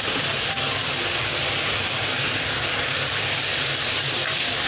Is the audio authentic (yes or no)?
yes